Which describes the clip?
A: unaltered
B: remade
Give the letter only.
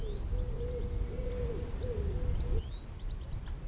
A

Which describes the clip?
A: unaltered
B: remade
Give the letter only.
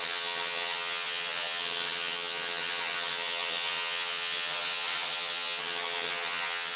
B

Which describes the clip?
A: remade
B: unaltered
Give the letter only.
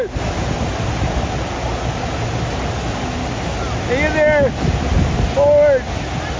B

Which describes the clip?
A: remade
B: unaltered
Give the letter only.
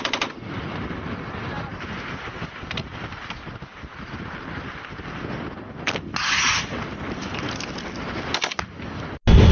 B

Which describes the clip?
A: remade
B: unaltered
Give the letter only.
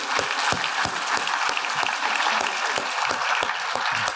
B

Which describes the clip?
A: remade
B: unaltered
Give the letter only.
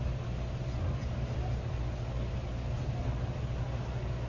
B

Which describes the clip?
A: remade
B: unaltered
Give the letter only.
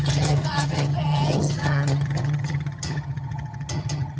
A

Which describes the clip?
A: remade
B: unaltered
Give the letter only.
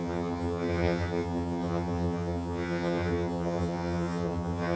A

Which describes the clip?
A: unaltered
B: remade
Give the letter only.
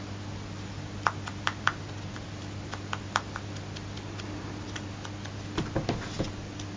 A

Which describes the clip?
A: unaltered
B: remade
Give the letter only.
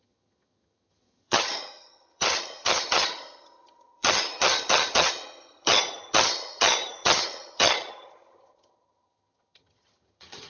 B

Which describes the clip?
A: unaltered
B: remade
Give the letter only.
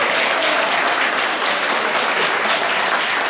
A